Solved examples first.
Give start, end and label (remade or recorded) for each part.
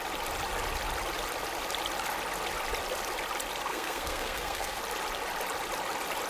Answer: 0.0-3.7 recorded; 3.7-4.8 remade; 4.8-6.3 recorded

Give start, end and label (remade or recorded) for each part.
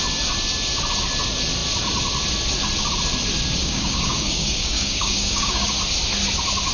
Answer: 0.0-3.6 recorded; 3.6-5.7 remade; 5.7-6.7 recorded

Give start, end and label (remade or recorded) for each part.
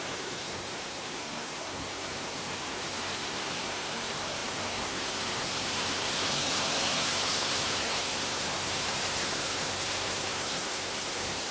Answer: 0.0-11.5 remade